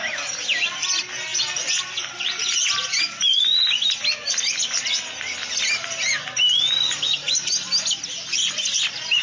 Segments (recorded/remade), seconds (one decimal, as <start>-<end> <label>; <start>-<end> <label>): 0.0-9.2 recorded